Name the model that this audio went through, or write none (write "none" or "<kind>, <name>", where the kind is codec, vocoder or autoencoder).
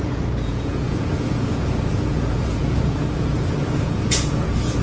vocoder, Vocos